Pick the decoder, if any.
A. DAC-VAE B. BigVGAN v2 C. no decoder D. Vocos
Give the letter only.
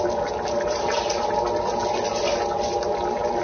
C